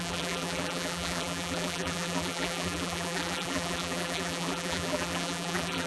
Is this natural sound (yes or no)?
no